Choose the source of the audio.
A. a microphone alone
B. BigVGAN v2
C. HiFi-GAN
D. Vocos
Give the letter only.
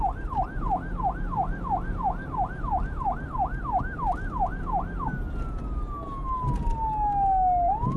A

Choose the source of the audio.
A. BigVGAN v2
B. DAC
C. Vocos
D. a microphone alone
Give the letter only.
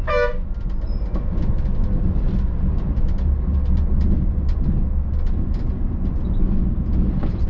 D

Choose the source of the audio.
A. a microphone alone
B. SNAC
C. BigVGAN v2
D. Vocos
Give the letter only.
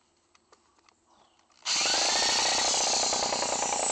A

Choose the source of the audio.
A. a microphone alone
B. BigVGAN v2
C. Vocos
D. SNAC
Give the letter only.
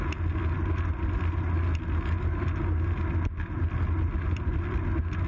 A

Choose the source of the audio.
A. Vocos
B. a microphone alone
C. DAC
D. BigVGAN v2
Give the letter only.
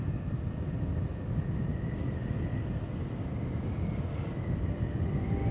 B